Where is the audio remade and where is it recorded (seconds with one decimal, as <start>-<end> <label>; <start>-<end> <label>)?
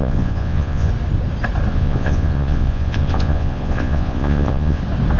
0.0-0.9 remade; 0.9-1.7 recorded; 1.7-4.8 remade; 4.8-5.2 recorded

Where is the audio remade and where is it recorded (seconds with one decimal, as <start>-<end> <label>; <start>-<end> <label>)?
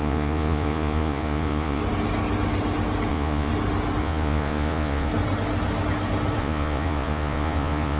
0.0-1.8 remade; 1.8-3.1 recorded; 3.1-3.5 remade; 3.5-4.0 recorded; 4.0-5.1 remade; 5.1-6.4 recorded; 6.4-8.0 remade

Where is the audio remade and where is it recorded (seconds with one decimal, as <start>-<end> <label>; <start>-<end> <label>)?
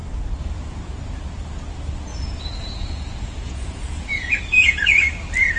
0.0-2.1 recorded; 2.1-5.0 remade; 5.0-5.6 recorded